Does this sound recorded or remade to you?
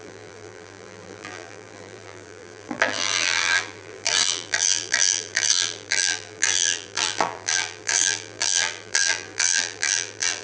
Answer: remade